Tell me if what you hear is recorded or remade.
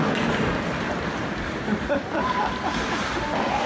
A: recorded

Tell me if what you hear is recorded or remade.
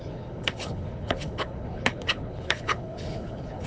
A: remade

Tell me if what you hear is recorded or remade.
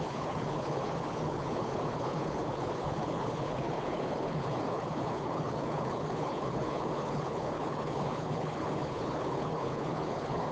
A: remade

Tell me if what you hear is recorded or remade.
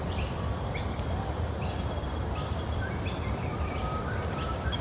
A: recorded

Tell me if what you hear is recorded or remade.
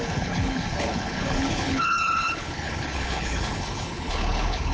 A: remade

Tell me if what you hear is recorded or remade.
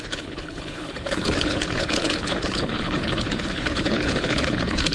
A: remade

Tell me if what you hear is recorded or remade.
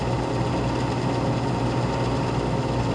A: recorded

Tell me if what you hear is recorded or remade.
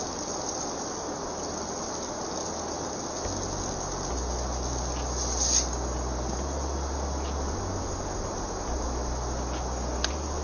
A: recorded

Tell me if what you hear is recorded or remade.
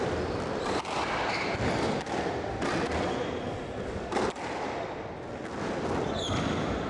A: recorded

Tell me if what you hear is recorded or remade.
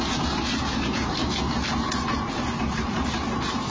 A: recorded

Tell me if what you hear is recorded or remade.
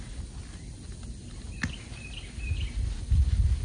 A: recorded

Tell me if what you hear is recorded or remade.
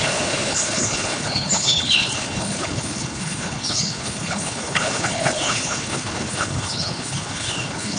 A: remade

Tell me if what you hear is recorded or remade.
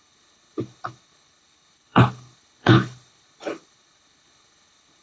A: remade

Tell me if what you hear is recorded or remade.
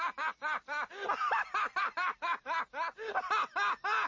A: recorded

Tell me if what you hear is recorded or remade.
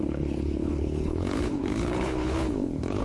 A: remade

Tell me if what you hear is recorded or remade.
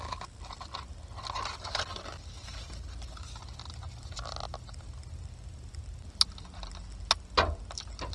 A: recorded